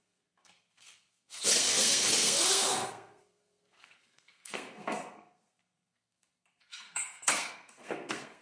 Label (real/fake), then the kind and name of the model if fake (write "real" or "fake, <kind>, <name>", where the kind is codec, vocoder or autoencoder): fake, codec, SNAC